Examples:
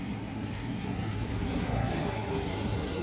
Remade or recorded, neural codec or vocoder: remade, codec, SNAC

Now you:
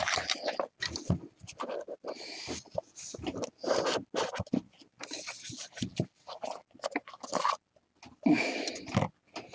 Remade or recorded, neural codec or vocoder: recorded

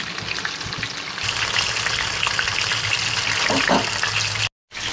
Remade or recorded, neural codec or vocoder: recorded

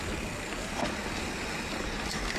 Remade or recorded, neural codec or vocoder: recorded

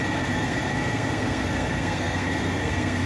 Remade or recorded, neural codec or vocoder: remade, codec, SNAC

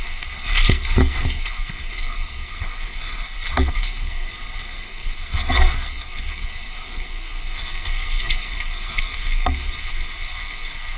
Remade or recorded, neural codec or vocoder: remade, codec, SNAC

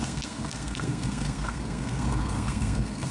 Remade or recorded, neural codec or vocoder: remade, codec, SNAC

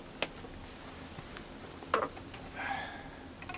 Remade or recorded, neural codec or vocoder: recorded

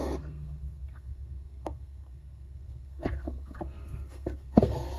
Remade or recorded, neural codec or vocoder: remade, codec, SNAC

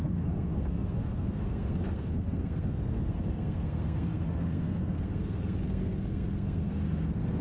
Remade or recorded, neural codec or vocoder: remade, codec, SNAC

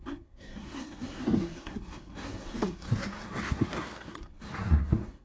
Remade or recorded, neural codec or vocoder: remade, codec, SNAC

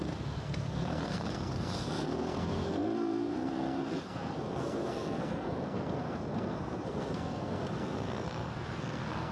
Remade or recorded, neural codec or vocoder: remade, codec, SNAC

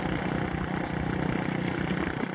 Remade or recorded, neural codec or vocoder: recorded